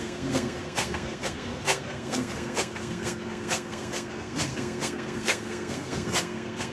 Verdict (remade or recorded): remade